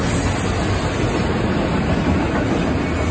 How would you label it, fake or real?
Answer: real